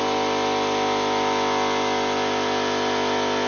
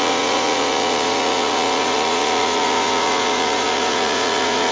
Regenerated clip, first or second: second